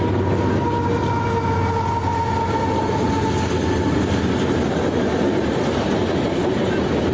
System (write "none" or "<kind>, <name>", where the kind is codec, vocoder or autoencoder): none